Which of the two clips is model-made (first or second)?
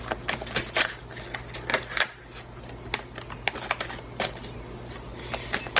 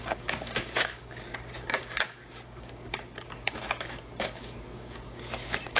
second